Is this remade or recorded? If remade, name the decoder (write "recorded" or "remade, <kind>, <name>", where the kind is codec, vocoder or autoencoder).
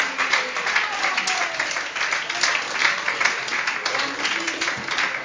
recorded